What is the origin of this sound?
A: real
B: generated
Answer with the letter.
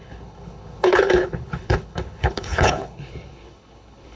B